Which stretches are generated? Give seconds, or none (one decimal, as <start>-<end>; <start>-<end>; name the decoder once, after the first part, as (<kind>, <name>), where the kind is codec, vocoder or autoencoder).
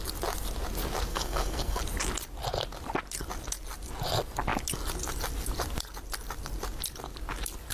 1.1-1.8 (codec, SNAC)